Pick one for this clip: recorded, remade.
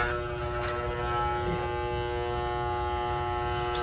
recorded